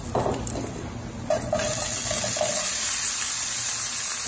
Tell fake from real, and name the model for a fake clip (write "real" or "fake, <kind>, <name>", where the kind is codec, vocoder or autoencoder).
real